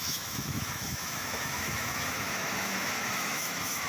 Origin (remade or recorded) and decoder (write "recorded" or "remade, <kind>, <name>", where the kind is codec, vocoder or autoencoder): remade, autoencoder, DAC-VAE